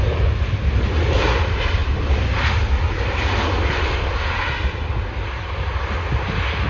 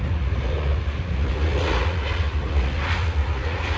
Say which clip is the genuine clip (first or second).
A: first